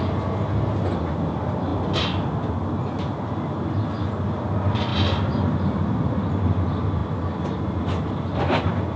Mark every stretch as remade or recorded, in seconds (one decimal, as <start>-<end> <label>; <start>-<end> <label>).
0.0-9.0 recorded